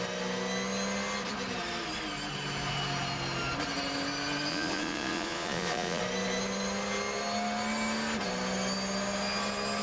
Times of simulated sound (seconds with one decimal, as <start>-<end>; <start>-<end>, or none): 4.5-6.0